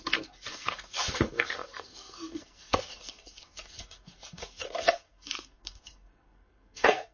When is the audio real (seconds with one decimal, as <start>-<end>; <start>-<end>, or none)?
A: none